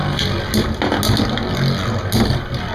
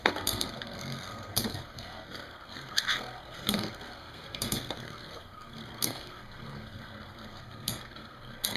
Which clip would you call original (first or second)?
first